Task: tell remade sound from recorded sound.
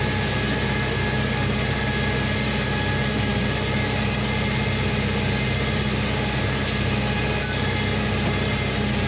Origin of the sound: recorded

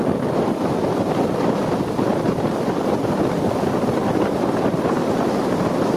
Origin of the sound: remade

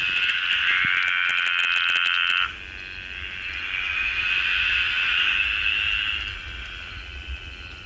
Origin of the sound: recorded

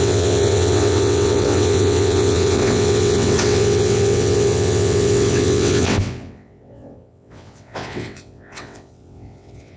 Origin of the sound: remade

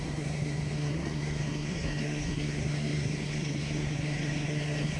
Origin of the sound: remade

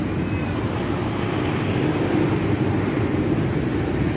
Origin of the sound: recorded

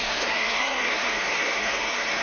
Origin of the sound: remade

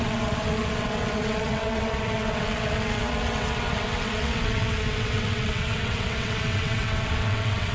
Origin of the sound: remade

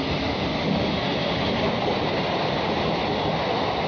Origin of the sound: recorded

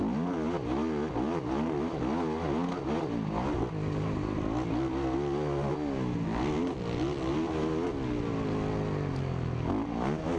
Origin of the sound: recorded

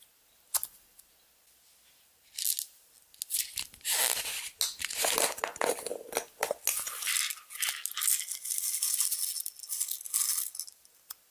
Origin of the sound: recorded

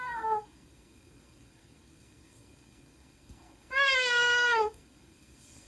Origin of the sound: remade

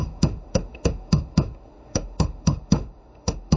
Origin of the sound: remade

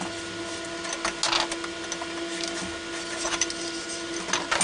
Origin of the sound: recorded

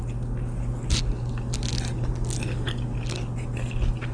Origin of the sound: recorded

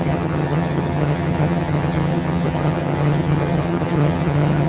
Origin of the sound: remade